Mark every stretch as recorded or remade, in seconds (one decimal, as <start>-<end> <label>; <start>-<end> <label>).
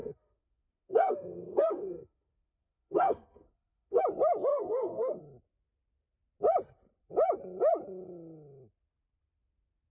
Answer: 0.0-4.0 remade; 4.0-4.5 recorded; 4.5-5.2 remade; 5.2-9.9 recorded